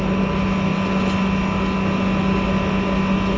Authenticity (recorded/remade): recorded